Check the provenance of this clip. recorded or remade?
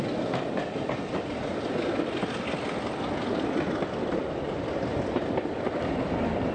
recorded